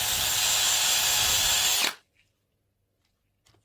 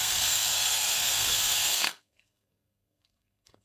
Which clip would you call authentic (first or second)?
first